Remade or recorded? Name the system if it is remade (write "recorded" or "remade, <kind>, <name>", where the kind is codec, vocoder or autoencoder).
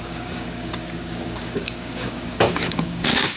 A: remade, codec, DAC